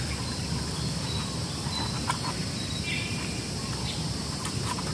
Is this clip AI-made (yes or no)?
no